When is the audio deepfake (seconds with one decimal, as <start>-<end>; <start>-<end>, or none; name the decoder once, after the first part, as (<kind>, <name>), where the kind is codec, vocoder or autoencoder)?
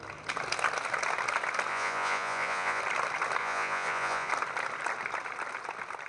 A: 1.7-2.8 (vocoder, Vocos); 3.4-4.3